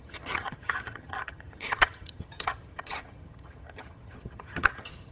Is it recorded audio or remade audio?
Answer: remade